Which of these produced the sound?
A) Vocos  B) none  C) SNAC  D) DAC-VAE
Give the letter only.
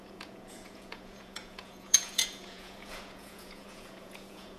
A